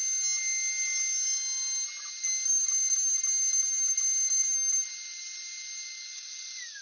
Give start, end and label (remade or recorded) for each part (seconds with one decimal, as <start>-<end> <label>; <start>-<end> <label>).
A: 0.0-6.8 recorded